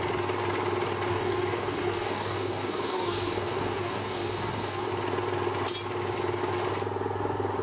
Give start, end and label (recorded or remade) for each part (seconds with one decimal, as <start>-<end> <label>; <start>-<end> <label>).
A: 0.0-1.1 recorded; 1.1-4.9 remade; 4.9-7.6 recorded